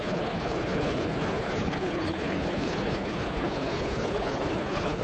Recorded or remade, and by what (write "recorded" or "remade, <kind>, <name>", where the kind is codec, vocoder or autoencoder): remade, codec, HILCodec